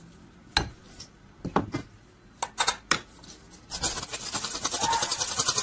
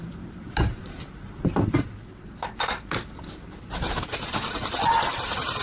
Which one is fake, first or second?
second